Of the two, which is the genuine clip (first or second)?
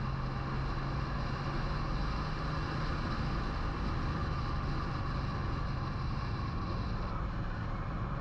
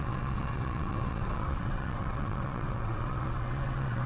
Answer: first